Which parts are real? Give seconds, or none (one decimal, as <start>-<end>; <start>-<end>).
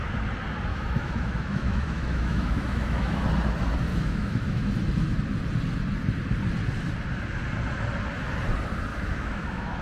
0.0-0.7; 3.2-3.9; 4.7-8.9